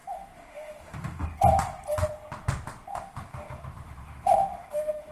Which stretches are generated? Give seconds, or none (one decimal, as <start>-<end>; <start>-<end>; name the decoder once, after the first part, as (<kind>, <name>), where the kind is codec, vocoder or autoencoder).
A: 0.0-1.2 (autoencoder, DAC-VAE); 2.9-5.1